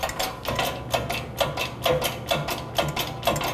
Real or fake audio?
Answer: real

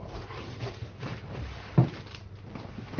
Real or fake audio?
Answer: fake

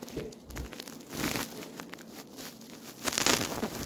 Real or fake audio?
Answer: real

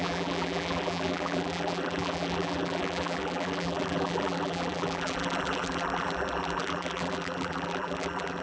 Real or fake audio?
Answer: fake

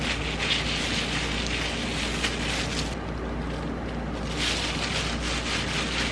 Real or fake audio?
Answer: real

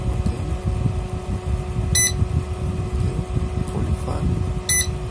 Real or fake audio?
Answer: real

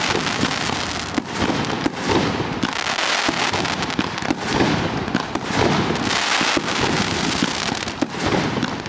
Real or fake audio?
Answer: real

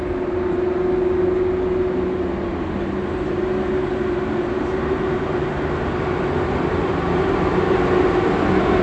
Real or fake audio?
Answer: real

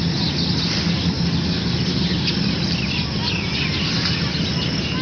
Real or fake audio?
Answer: real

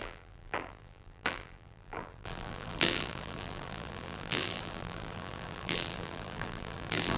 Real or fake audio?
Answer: fake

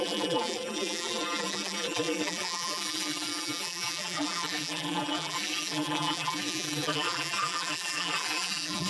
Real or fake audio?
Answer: fake